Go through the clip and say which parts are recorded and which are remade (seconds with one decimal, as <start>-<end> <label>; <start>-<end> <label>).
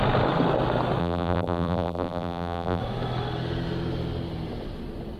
0.0-1.0 recorded; 1.0-2.8 remade; 2.8-5.2 recorded